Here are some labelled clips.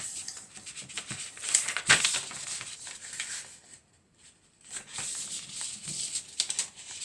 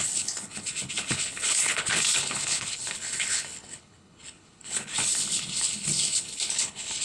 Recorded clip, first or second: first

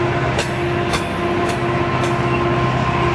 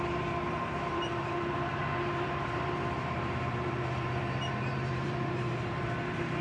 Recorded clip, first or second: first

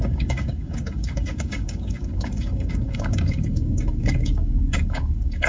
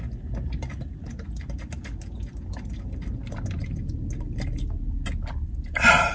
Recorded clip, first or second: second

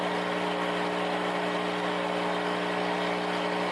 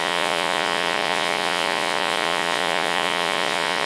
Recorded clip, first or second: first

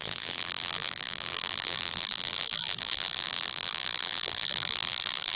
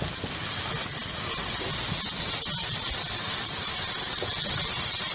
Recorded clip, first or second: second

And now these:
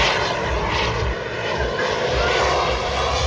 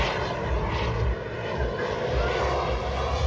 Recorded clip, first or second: second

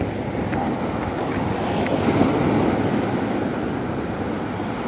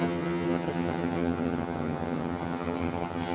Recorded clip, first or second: first